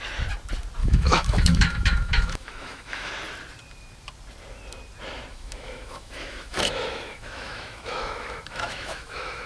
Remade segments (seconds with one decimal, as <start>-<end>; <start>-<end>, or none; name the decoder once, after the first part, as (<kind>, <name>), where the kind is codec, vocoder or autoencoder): 0.8-3.1 (autoencoder, DAC-VAE); 5.3-9.5